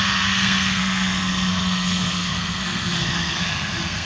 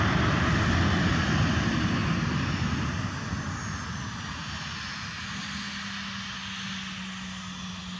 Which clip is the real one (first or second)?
second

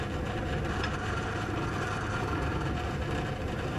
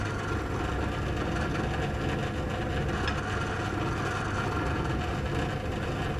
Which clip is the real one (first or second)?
second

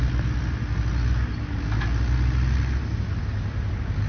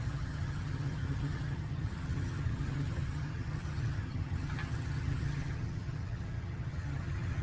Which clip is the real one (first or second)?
first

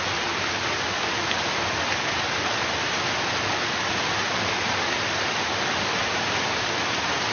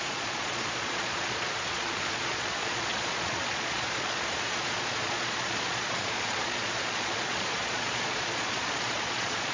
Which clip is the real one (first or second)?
first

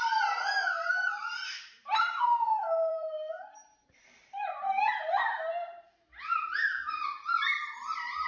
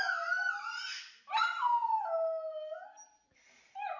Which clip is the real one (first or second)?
second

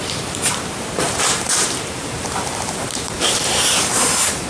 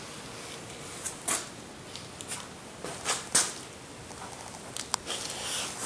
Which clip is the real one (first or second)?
second